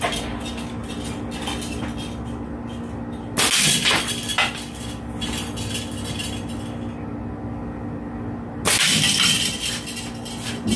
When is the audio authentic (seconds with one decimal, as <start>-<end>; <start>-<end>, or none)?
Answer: 0.0-10.8